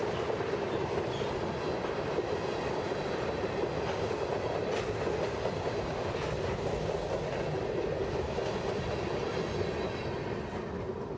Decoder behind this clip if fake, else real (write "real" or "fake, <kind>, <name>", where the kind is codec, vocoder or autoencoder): real